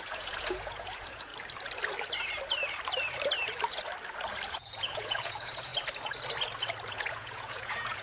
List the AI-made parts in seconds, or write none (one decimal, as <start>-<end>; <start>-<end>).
0.0-1.3; 4.5-5.7; 6.9-8.0